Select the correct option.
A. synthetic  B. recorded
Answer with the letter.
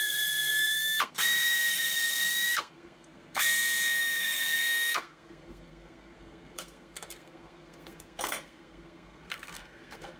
A